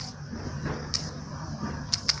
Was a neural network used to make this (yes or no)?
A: no